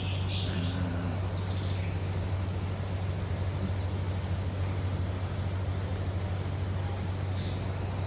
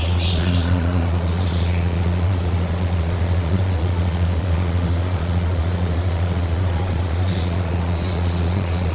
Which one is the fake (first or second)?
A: second